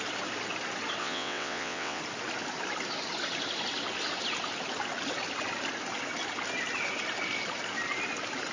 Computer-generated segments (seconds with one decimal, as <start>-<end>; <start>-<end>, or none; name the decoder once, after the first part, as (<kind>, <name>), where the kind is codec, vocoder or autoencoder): 1.0-2.0 (vocoder, WaveNeXt)